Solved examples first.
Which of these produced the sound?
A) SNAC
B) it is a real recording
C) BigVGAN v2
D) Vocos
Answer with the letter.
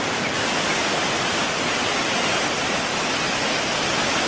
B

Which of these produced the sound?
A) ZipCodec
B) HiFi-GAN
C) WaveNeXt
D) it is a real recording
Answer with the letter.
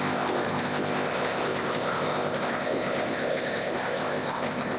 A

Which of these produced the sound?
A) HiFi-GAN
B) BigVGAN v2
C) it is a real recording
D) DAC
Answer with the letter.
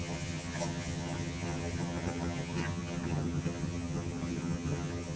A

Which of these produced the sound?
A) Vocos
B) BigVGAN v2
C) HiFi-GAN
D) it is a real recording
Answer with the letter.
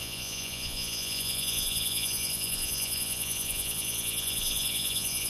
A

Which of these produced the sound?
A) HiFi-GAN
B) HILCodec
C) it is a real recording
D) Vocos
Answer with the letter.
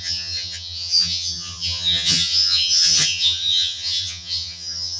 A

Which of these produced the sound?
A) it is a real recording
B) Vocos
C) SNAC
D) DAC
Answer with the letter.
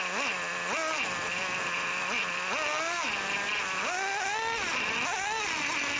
A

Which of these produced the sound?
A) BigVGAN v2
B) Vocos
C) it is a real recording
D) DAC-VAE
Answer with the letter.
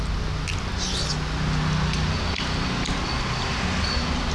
C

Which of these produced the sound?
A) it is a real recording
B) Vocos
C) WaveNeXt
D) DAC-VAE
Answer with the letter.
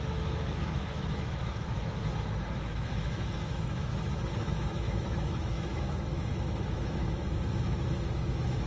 D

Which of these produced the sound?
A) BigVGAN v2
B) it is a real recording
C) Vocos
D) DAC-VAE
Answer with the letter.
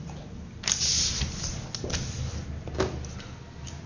B